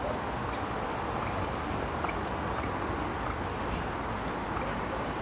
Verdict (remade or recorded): recorded